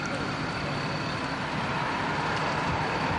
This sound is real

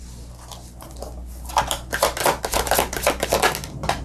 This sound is real